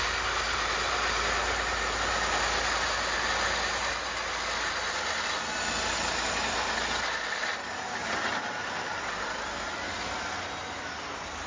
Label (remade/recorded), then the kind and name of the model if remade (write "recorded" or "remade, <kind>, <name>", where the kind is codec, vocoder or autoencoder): recorded